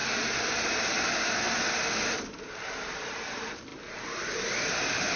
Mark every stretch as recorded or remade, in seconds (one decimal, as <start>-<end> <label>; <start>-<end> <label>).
0.0-2.9 recorded; 2.9-5.2 remade